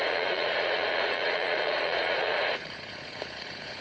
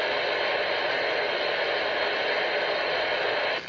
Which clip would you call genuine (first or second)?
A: second